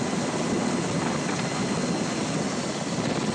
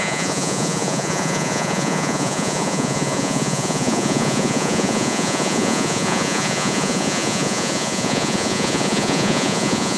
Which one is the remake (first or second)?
second